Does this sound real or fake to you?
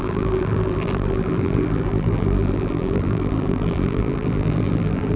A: fake